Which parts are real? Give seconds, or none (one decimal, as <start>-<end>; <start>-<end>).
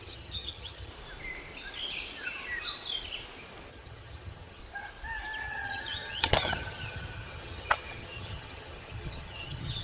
0.9-3.7; 4.6-5.4